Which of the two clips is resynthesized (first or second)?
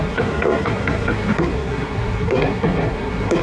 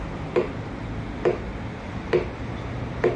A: first